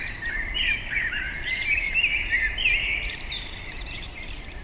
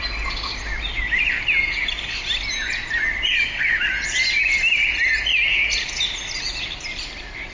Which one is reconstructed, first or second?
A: first